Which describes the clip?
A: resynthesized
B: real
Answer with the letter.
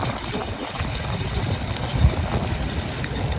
B